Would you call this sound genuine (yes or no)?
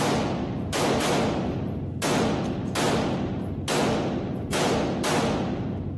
yes